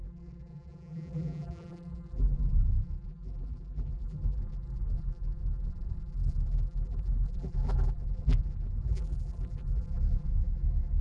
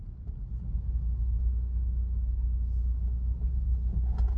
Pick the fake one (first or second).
first